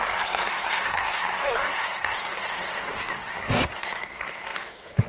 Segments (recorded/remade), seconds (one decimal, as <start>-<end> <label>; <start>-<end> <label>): 0.0-5.1 remade